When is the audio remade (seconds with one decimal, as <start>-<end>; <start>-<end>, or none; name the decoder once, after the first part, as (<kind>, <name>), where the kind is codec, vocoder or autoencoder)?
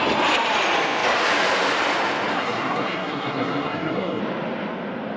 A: 2.3-4.2 (codec, SNAC)